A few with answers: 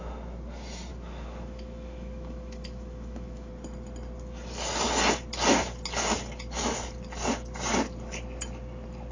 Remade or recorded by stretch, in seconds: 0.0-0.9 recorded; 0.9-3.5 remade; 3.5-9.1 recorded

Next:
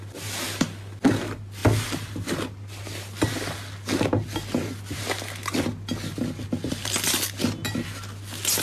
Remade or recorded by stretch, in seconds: 0.0-8.6 recorded

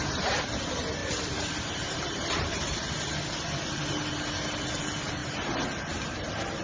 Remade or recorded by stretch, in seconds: 0.0-6.6 recorded

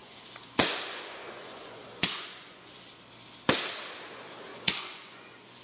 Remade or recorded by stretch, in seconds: 0.0-2.8 remade; 2.8-4.5 recorded; 4.5-5.6 remade